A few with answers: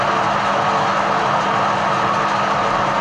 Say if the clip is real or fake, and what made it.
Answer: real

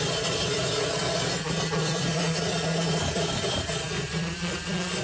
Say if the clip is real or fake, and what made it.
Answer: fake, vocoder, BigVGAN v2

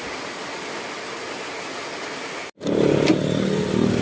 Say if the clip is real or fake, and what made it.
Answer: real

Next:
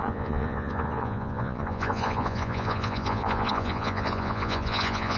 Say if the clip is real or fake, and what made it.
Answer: fake, vocoder, Vocos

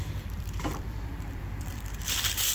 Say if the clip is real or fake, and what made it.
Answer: fake, vocoder, BigVGAN v2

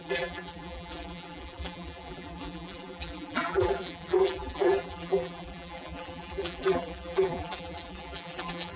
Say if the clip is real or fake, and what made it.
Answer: fake, vocoder, BigVGAN v2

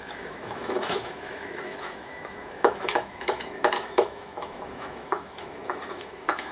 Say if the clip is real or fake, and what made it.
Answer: fake, autoencoder, DAC-VAE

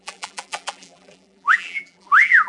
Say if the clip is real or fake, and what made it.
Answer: fake, vocoder, BigVGAN v2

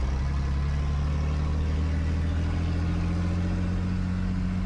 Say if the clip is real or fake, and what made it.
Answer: real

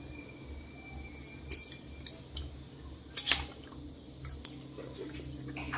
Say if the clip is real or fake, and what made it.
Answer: real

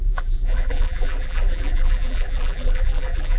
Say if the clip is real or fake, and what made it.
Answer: fake, vocoder, BigVGAN v2